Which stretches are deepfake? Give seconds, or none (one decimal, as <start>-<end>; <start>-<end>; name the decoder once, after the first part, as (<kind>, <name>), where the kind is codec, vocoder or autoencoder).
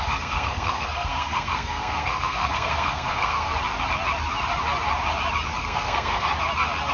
0.0-3.5 (codec, SNAC); 5.6-6.3